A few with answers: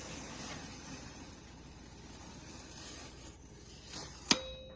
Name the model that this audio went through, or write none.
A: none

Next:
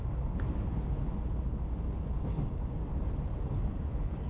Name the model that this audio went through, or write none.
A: none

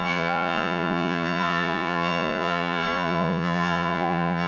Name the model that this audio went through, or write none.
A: vocoder, Vocos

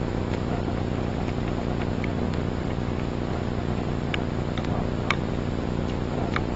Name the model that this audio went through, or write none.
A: none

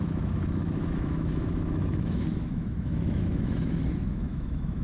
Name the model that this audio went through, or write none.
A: autoencoder, DAC-VAE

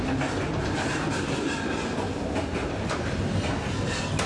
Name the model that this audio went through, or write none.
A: none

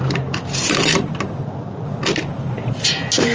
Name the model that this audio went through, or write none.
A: none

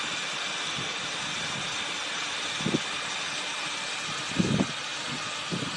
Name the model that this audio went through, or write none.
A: none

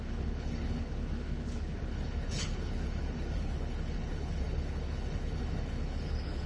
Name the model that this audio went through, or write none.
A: codec, HILCodec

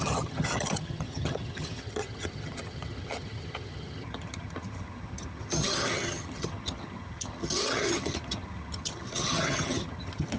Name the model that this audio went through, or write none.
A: vocoder, HiFi-GAN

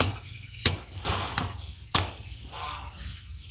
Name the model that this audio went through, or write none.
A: codec, SNAC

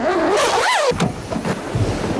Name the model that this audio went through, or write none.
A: none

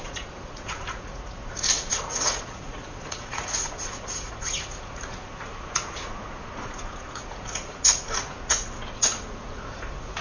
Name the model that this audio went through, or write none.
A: vocoder, Vocos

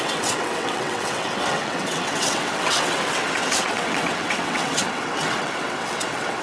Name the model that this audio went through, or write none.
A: vocoder, WaveNeXt